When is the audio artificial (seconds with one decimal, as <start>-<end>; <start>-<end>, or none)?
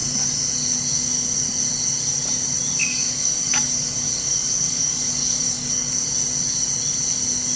2.8-5.9